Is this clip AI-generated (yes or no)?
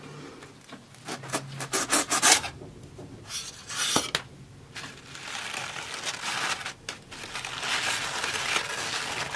no